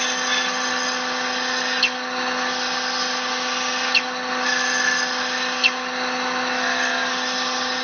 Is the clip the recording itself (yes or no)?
yes